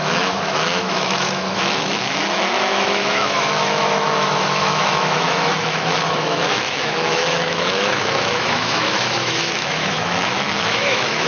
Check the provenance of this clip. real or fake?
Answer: fake